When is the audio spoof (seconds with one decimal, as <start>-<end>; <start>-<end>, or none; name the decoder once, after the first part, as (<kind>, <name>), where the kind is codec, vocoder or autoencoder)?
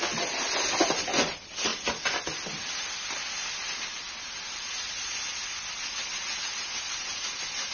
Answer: none